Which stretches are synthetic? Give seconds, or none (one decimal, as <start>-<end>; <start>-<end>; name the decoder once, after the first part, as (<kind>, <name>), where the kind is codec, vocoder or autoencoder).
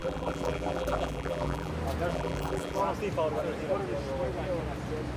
0.0-1.7 (vocoder, BigVGAN v2); 2.1-2.8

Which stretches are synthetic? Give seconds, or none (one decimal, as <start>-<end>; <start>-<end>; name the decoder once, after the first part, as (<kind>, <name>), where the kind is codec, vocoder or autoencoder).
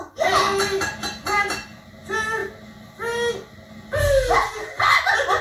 none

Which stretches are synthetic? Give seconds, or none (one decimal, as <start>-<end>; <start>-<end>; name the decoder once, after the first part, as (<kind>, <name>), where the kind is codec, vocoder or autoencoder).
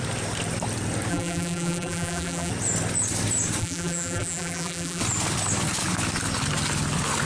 1.1-2.5 (vocoder, BigVGAN v2); 3.6-5.0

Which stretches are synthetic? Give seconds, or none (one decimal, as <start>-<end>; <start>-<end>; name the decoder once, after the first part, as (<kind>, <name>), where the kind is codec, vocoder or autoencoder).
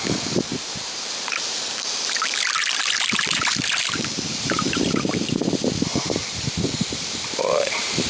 0.0-2.6 (vocoder, BigVGAN v2); 3.4-8.1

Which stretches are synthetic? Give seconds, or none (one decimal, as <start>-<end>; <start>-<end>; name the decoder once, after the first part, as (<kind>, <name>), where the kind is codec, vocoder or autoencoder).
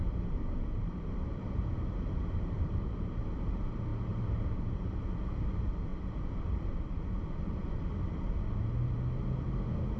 0.0-3.2 (vocoder, BigVGAN v2); 3.9-4.9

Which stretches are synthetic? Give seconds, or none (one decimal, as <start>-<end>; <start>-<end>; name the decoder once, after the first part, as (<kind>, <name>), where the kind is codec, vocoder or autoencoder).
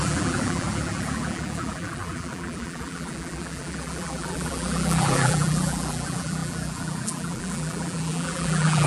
0.0-8.9 (vocoder, BigVGAN v2)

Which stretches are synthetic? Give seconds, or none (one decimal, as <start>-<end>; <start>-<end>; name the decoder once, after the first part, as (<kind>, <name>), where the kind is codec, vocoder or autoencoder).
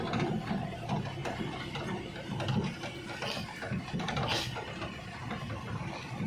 none